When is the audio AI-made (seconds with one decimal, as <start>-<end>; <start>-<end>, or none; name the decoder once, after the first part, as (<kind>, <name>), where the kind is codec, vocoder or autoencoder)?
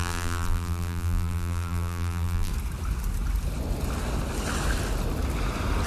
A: 0.0-2.5 (vocoder, BigVGAN v2)